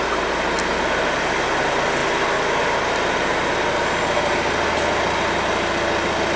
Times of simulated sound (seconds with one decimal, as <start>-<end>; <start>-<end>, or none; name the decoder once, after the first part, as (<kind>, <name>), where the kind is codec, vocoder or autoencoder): none